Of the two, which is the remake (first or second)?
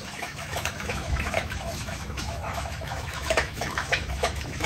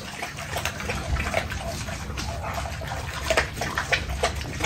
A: first